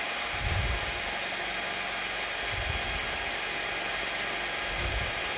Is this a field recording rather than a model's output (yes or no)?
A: yes